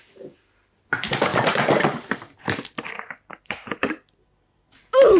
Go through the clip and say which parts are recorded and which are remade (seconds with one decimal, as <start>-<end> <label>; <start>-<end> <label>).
0.0-1.3 recorded; 1.3-4.1 remade; 4.1-5.2 recorded